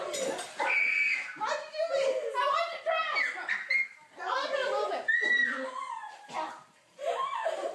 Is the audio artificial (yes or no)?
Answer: no